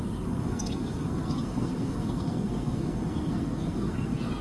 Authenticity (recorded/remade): remade